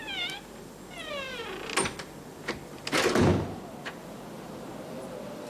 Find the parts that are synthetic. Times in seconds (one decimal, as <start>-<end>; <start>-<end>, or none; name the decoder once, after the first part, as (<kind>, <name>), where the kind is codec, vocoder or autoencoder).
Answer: none